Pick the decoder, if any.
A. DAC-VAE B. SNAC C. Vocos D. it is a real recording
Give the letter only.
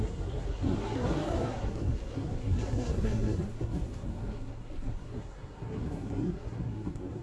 B